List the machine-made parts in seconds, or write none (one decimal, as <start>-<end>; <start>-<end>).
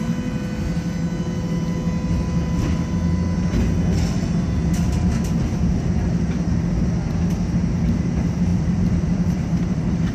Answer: 8.5-10.1